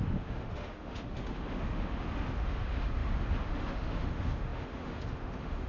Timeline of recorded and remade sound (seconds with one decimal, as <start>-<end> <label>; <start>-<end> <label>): 0.0-5.7 remade